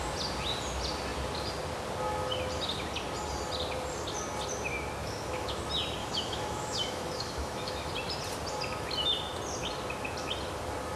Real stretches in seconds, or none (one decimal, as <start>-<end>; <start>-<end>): 0.0-5.0; 5.6-6.0; 7.9-11.0